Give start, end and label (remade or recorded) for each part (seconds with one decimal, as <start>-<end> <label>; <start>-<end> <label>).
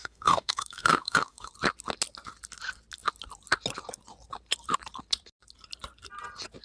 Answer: 0.0-1.5 remade; 1.5-6.6 recorded